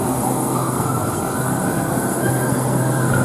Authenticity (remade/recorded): remade